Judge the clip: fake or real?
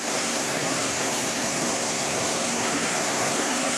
fake